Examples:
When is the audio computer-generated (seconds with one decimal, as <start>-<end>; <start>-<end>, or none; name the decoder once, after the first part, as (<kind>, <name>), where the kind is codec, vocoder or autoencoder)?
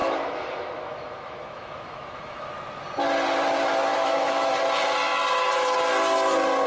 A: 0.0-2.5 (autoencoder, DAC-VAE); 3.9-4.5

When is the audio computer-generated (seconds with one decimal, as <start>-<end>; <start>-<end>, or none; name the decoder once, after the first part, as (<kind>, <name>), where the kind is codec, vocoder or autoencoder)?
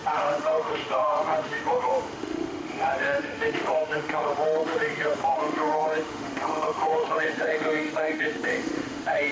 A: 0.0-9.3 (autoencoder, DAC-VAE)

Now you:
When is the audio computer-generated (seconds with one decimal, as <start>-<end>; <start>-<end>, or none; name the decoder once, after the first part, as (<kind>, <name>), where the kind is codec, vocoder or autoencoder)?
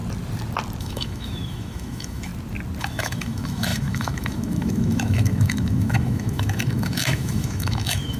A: 0.8-2.3 (autoencoder, DAC-VAE); 2.8-8.2